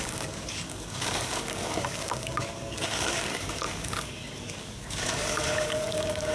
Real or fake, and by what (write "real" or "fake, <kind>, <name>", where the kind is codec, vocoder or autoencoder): fake, codec, DAC